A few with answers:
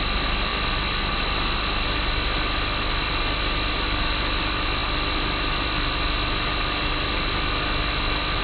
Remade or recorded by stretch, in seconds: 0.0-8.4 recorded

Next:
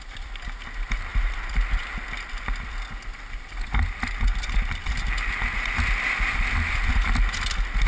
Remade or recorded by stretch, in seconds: 0.0-7.9 recorded

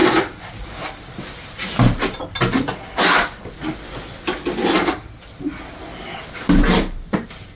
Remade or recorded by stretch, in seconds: 0.0-7.6 recorded